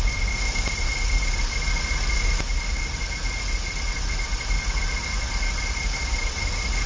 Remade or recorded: recorded